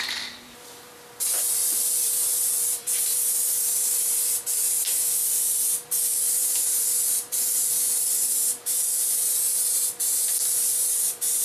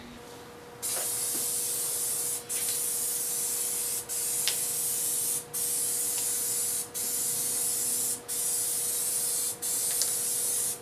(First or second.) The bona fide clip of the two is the second